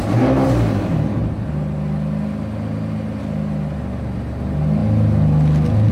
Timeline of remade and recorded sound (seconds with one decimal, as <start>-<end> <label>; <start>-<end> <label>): 0.0-5.9 recorded